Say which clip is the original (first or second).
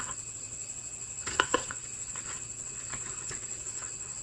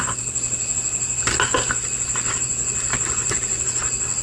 second